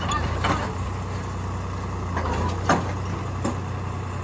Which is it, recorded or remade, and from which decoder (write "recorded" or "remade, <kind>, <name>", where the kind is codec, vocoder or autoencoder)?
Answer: recorded